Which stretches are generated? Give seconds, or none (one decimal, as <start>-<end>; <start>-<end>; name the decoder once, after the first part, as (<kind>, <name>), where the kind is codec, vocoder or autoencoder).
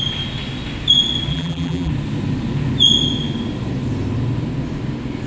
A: 1.3-1.9 (vocoder, BigVGAN v2)